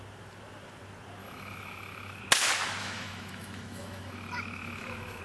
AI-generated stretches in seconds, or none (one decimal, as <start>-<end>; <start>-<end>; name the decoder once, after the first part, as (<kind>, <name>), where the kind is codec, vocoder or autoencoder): 1.2-2.2 (autoencoder, DAC-VAE); 2.8-5.2